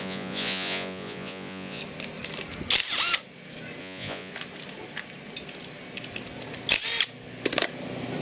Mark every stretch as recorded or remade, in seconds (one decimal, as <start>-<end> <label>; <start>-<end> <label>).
0.0-1.8 remade; 1.8-3.8 recorded; 3.8-4.3 remade; 4.3-8.2 recorded